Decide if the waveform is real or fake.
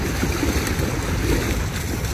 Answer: fake